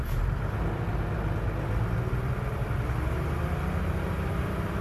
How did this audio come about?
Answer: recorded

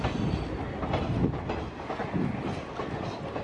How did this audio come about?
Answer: recorded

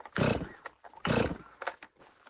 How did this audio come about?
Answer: recorded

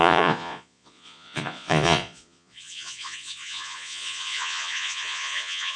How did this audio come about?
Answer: remade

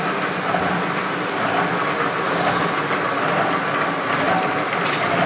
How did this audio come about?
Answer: recorded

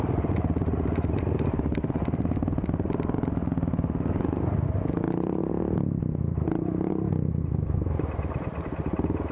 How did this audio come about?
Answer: recorded